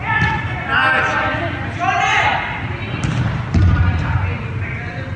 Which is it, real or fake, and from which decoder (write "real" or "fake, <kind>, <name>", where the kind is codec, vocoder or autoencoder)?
real